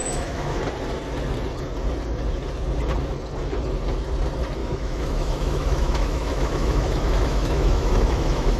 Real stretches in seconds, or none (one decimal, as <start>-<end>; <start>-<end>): 0.6-4.6